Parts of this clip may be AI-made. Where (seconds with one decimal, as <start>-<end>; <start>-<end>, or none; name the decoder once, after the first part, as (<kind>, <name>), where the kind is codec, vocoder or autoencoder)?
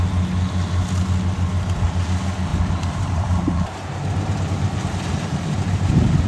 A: 2.5-6.3 (vocoder, BigVGAN v2)